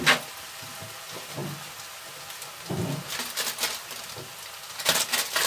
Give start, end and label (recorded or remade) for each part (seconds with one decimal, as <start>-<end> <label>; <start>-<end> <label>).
0.0-5.5 recorded